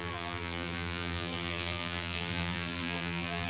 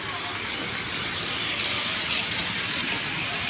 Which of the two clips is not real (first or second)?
first